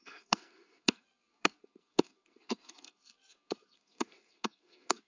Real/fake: fake